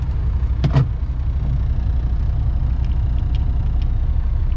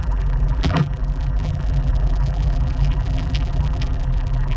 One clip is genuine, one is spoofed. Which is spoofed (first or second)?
second